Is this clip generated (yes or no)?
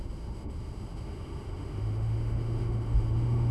yes